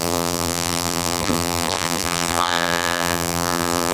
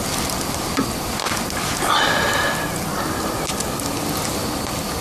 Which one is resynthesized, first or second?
first